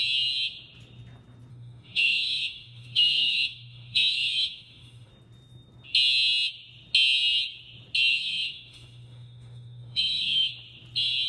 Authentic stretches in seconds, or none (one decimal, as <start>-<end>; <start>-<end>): 0.0-1.5; 5.1-8.1; 10.5-11.3